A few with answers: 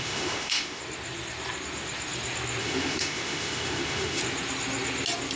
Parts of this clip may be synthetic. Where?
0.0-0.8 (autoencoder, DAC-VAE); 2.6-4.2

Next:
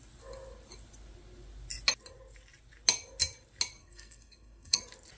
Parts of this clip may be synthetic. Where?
3.8-4.8 (codec, SNAC)

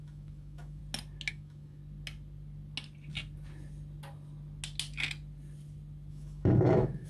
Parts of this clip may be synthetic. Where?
0.0-0.8 (autoencoder, DAC-VAE); 1.3-1.8; 6.1-7.1